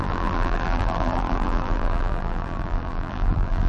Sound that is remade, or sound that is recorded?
remade